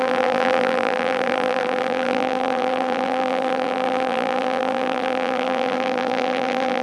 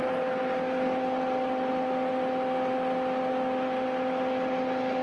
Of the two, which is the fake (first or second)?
first